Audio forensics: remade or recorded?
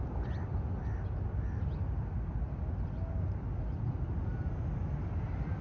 recorded